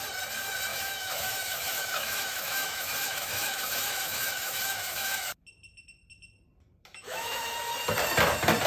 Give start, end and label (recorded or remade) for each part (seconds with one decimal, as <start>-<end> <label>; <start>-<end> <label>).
0.0-0.7 recorded; 0.7-5.3 remade; 5.3-6.9 recorded; 6.9-7.5 remade; 7.5-8.7 recorded